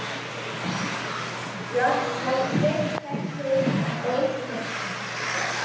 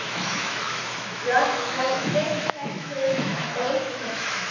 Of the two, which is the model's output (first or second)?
second